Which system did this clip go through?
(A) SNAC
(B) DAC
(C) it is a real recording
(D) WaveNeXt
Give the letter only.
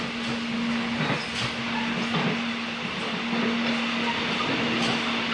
C